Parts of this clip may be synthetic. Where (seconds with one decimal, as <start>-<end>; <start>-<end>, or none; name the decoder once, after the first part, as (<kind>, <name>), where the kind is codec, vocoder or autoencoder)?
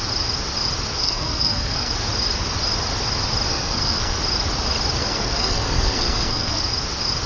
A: 1.0-1.9 (codec, SNAC); 3.5-4.2; 5.0-6.6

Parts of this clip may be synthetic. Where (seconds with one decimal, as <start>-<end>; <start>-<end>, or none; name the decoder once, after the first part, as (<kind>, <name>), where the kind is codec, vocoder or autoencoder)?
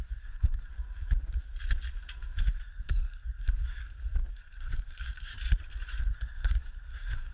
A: 0.0-0.7 (codec, SNAC); 2.5-3.8; 4.3-5.3; 6.0-7.3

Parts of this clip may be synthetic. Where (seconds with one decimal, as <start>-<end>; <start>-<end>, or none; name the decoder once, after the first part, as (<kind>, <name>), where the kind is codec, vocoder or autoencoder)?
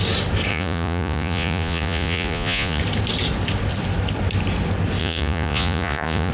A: 0.5-2.8 (vocoder, Vocos); 5.0-6.3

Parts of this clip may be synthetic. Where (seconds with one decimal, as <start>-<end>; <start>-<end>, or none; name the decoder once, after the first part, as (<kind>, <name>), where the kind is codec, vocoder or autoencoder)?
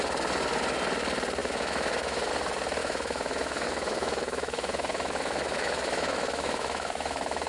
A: 1.4-2.3 (autoencoder, DAC-VAE); 2.8-7.5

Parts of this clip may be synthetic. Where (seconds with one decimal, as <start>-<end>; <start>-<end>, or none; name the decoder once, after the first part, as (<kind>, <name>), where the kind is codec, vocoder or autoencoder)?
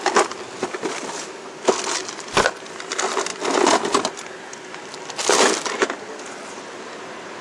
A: 2.0-2.9 (vocoder, BigVGAN v2)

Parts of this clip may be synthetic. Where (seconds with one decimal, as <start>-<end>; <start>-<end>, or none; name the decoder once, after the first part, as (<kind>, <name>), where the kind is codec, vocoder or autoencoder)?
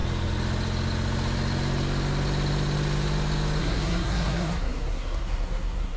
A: 3.6-6.0 (codec, SNAC)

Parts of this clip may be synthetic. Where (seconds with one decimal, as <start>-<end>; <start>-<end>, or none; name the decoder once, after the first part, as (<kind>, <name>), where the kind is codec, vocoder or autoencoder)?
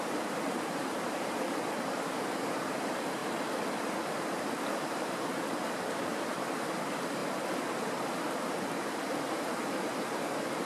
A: 0.0-3.2 (vocoder, BigVGAN v2); 3.8-7.2; 8.1-10.7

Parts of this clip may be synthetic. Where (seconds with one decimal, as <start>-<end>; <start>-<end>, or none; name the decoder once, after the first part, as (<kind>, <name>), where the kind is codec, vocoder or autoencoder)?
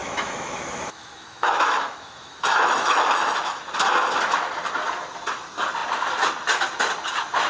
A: 0.0-3.7 (autoencoder, DAC-VAE)